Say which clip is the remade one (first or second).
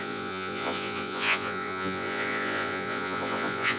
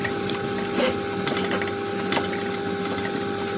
first